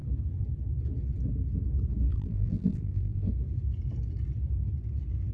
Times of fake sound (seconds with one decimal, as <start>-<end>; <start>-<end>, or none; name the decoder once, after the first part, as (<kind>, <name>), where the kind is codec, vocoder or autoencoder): 2.1-3.3 (vocoder, BigVGAN v2)